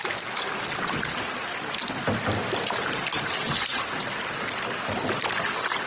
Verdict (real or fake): real